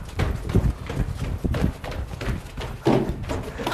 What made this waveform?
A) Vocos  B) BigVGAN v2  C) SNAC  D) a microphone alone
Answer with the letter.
D